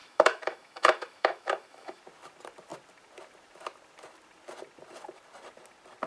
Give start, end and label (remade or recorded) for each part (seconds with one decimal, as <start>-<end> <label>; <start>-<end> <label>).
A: 0.0-2.0 remade; 2.0-6.1 recorded